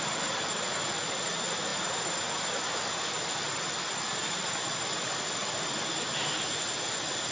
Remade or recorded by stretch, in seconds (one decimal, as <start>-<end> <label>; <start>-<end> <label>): 0.0-7.3 recorded